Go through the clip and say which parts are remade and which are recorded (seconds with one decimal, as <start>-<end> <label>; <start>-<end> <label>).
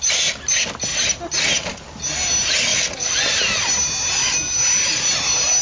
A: 0.0-2.7 recorded; 2.7-3.3 remade; 3.3-5.6 recorded